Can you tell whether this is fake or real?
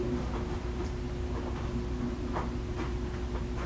real